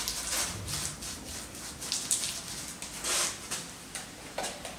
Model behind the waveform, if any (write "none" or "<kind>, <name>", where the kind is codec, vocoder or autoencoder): none